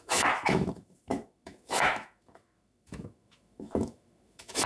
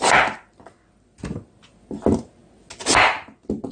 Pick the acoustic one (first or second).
second